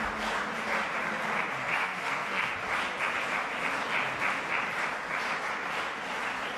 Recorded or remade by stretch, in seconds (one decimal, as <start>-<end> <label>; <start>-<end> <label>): 0.0-1.6 recorded; 1.6-2.5 remade; 2.5-6.6 recorded